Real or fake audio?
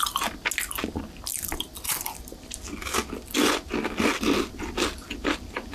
real